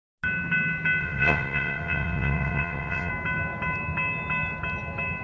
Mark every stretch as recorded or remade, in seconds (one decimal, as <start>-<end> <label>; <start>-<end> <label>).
0.0-1.0 recorded; 1.0-3.1 remade; 3.1-5.2 recorded